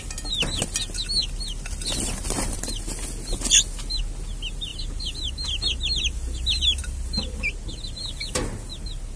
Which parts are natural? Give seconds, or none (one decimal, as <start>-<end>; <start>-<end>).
0.0-4.7; 8.1-9.2